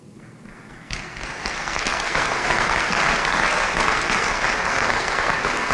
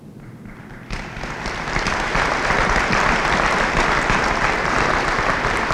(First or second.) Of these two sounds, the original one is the second